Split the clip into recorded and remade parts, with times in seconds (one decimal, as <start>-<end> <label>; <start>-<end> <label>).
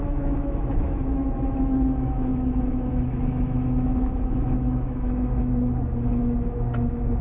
0.0-7.2 remade